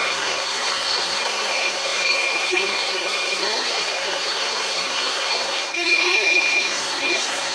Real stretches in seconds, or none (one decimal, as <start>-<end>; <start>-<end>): none